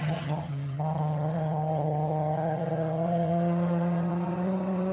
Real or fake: fake